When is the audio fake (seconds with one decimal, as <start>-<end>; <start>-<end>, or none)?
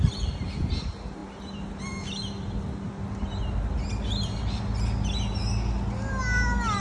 none